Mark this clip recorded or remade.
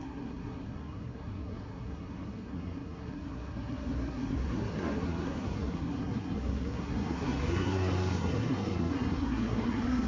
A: remade